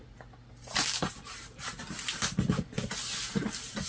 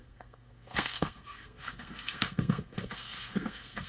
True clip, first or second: first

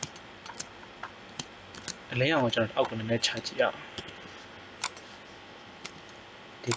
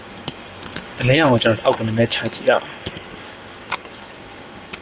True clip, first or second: first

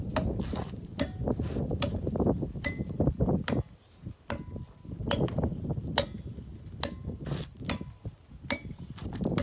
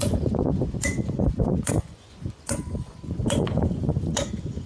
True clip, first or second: first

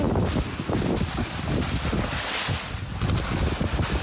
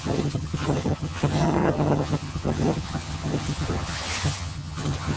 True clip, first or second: first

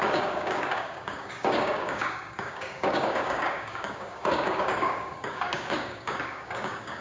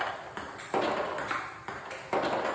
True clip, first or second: second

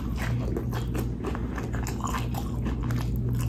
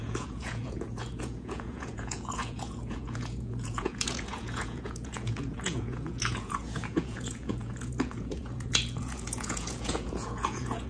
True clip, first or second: first